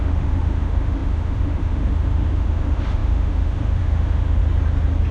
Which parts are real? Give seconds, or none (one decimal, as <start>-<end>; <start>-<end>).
4.4-5.1